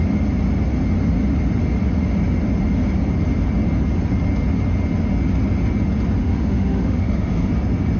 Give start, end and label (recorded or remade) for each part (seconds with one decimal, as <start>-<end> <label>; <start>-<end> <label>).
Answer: 0.0-6.2 recorded; 6.2-7.5 remade; 7.5-8.0 recorded